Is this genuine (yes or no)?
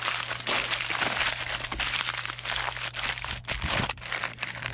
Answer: yes